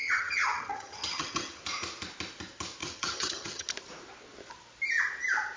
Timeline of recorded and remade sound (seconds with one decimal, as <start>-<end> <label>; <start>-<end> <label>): 0.0-1.6 remade; 1.6-2.8 recorded; 2.8-3.7 remade; 3.7-5.6 recorded